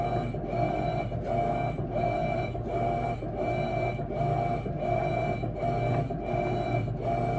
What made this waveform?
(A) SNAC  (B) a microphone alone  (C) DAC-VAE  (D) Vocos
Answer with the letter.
B